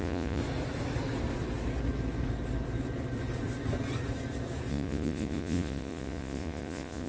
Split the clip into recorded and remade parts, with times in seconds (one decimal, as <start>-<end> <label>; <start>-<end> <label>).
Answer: 0.0-0.4 remade; 0.4-4.7 recorded; 4.7-7.1 remade